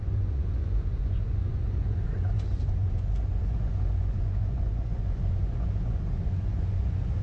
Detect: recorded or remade remade